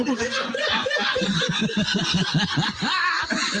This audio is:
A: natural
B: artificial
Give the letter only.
B